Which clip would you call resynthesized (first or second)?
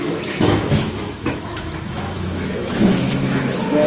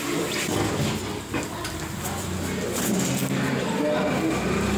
first